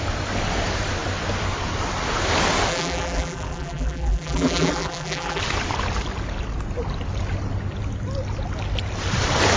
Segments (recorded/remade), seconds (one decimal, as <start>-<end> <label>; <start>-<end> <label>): 0.0-2.7 recorded; 2.7-5.4 remade; 5.4-9.6 recorded